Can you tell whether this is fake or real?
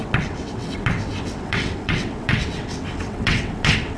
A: fake